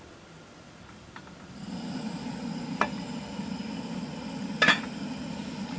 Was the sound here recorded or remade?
remade